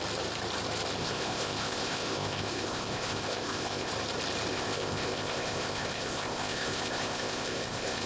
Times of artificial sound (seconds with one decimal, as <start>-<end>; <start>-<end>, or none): 1.0-3.9; 4.5-8.1